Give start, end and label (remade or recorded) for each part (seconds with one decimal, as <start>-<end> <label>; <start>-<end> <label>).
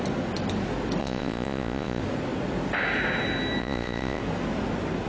0.0-1.0 recorded; 1.0-2.0 remade; 2.0-3.6 recorded; 3.6-4.2 remade; 4.2-5.1 recorded